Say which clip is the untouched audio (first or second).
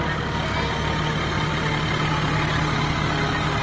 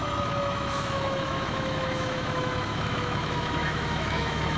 first